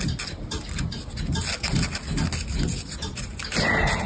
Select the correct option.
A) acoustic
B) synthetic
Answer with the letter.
A